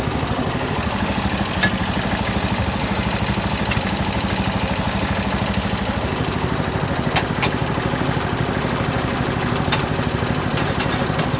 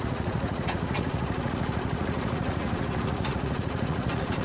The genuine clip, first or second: first